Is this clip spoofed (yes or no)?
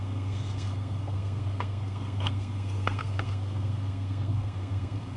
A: yes